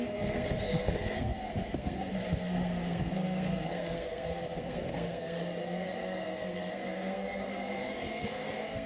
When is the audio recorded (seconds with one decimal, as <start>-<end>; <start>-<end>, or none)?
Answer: none